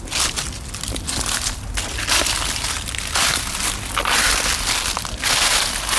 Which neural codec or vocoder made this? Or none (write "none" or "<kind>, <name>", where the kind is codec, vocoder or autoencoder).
none